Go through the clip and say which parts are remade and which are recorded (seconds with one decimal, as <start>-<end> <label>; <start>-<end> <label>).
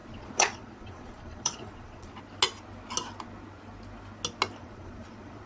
0.0-2.2 remade; 2.2-4.6 recorded; 4.6-5.5 remade